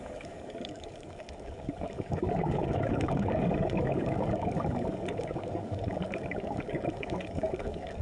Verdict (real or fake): fake